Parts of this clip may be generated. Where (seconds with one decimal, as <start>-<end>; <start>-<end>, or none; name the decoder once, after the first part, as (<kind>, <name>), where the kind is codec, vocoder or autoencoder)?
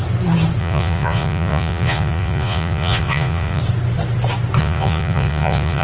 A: 0.6-3.6 (vocoder, Vocos); 4.6-5.8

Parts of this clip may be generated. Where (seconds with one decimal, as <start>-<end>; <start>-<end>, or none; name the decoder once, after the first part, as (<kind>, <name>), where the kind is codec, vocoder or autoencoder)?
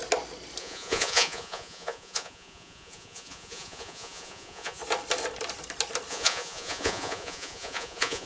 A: 0.6-4.8 (vocoder, Vocos); 6.1-8.3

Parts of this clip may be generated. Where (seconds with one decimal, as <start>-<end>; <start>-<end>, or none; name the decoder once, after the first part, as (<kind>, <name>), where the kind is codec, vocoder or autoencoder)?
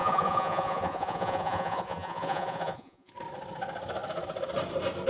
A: 0.0-3.1 (vocoder, Vocos)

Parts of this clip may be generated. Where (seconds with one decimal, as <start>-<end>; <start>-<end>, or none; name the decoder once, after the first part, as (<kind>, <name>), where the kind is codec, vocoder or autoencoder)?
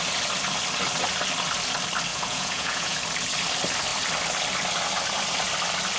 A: 2.1-3.0 (vocoder, Vocos)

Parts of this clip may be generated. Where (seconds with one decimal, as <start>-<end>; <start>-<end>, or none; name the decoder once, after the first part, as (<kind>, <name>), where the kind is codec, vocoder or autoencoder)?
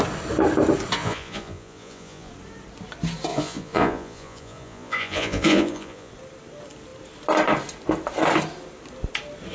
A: 1.0-2.3 (vocoder, Vocos); 3.3-6.1